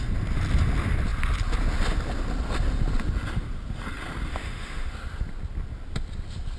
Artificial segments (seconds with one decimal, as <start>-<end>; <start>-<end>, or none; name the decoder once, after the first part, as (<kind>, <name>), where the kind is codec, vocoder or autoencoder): 4.3-4.9 (autoencoder, DAC-VAE)